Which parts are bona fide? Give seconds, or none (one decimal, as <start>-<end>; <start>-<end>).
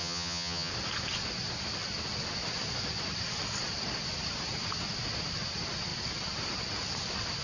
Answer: 0.7-7.4